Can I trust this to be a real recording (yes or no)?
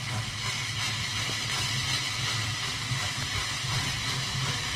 yes